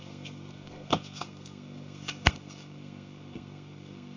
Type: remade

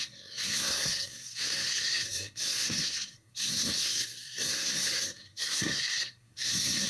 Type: remade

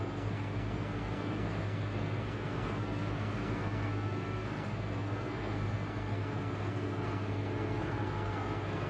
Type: remade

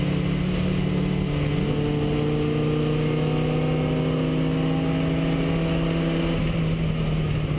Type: recorded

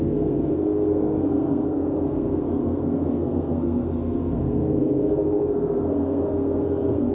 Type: remade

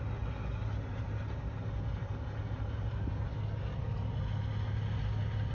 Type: recorded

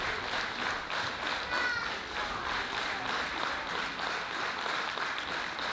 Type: recorded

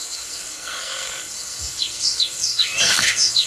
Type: remade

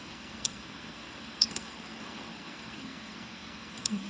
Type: remade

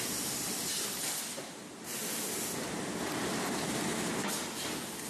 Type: recorded